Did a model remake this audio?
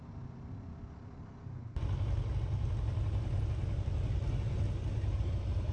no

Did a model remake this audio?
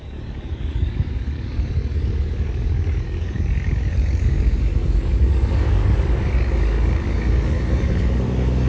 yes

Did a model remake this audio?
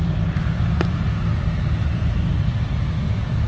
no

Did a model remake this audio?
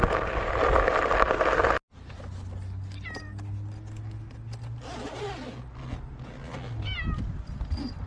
no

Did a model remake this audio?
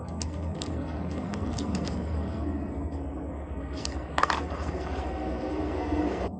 yes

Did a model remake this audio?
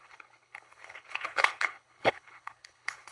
yes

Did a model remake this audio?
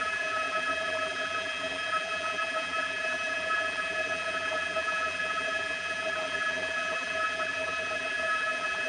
yes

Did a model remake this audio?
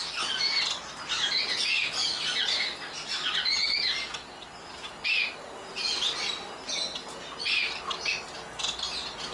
no